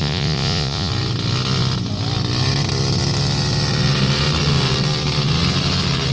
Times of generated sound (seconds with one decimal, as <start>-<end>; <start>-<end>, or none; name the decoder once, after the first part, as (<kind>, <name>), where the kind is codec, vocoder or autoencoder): 0.0-0.9 (vocoder, Vocos)